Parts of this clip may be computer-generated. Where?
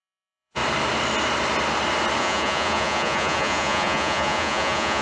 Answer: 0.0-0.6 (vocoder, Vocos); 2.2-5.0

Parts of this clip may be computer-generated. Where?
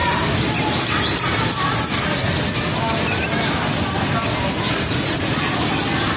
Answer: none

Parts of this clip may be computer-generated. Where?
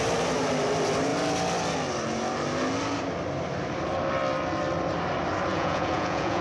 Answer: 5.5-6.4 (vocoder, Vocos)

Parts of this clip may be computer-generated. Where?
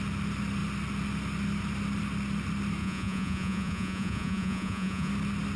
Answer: 2.8-5.1 (vocoder, Vocos)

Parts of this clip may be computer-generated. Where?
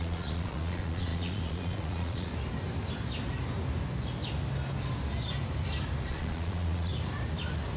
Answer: 0.0-2.3 (vocoder, Vocos); 6.1-6.9